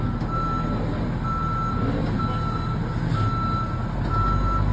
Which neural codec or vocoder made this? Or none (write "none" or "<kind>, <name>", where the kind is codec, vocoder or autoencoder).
none